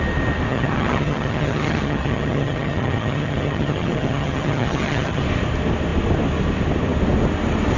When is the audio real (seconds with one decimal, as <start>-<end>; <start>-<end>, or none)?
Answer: 0.0-0.5; 5.2-7.8